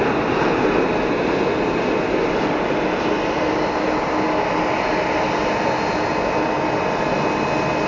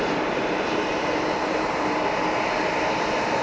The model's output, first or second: second